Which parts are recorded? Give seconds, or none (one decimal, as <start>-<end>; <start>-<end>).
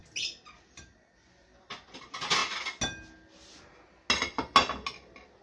0.0-5.4